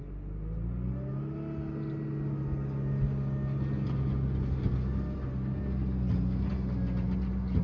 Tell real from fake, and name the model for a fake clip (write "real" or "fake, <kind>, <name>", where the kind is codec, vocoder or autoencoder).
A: real